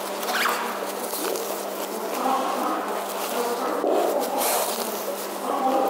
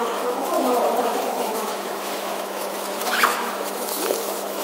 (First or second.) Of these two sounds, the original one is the first